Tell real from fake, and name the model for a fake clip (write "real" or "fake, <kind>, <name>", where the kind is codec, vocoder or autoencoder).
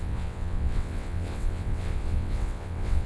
fake, vocoder, WaveNeXt